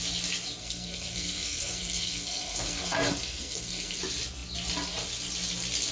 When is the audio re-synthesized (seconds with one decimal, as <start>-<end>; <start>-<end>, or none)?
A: 0.6-4.0